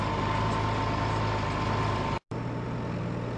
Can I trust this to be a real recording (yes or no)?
yes